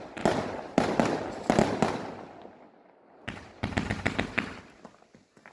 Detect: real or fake real